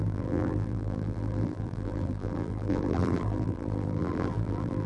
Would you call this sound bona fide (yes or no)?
no